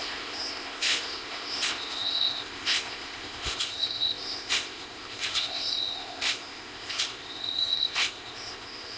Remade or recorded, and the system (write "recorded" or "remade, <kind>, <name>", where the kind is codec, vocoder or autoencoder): remade, codec, ZipCodec